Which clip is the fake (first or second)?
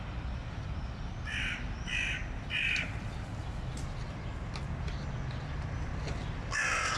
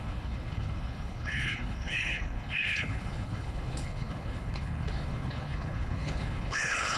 second